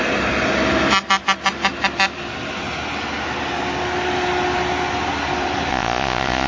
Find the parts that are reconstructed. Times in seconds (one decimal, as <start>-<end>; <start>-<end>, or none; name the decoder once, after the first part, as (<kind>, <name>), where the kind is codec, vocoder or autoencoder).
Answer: 5.7-6.5 (vocoder, Vocos)